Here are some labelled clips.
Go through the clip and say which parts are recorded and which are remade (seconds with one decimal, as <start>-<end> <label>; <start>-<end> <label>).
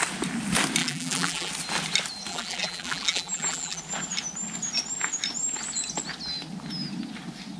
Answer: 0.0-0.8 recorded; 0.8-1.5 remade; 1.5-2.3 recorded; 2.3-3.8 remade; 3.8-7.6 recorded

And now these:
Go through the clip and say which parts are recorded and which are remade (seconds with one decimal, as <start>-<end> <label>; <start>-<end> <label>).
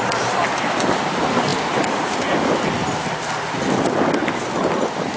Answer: 0.0-5.2 recorded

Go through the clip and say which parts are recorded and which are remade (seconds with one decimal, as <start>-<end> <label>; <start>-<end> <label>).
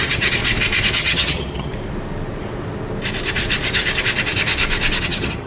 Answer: 0.0-0.4 remade; 0.4-0.9 recorded; 0.9-1.7 remade; 1.7-5.0 recorded; 5.0-5.5 remade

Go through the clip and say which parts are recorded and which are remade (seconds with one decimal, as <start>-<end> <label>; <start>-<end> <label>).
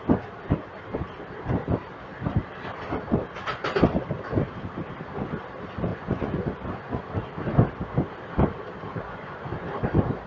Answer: 0.0-5.9 recorded; 5.9-7.1 remade; 7.1-8.9 recorded; 8.9-9.5 remade; 9.5-10.3 recorded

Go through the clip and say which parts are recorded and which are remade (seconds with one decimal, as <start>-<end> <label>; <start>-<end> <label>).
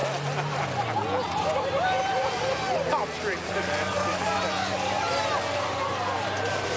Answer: 0.0-1.3 recorded; 1.3-6.8 remade